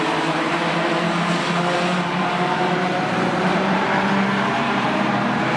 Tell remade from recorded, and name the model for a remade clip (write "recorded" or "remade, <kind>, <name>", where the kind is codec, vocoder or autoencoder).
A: remade, vocoder, BigVGAN v2